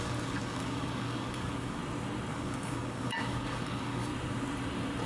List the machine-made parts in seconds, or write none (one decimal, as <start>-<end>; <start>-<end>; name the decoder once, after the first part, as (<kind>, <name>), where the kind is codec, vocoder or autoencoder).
0.0-1.8 (codec, DAC); 2.3-4.1